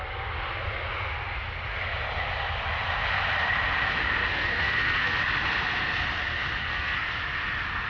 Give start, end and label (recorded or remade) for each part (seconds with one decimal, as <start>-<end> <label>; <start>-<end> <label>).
0.0-4.3 recorded; 4.3-5.2 remade; 5.2-6.6 recorded; 6.6-7.1 remade; 7.1-7.9 recorded